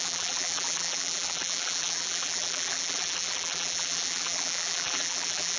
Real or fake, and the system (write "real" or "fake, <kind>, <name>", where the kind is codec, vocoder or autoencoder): fake, vocoder, BigVGAN v2